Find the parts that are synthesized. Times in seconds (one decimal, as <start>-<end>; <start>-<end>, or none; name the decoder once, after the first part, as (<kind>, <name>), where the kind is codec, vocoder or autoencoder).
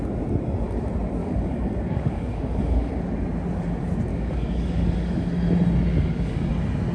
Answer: 1.2-2.9 (codec, DAC); 4.1-5.3; 5.9-6.5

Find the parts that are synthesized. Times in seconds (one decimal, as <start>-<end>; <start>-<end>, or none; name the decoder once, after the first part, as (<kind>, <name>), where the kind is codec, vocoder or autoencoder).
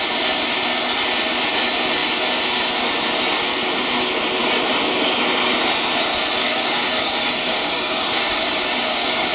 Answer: 6.4-9.3 (codec, DAC)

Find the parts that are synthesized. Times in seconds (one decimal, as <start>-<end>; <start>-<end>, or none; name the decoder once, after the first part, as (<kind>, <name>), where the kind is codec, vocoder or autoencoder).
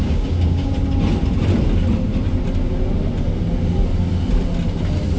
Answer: 0.0-0.7 (codec, DAC)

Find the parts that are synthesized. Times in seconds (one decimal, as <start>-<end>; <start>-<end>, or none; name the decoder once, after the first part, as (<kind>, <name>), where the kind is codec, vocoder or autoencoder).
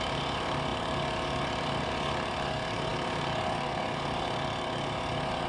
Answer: 0.0-5.5 (codec, DAC)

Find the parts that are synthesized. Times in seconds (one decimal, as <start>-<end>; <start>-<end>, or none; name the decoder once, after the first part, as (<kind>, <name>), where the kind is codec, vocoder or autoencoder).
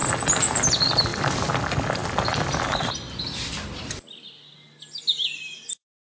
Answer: none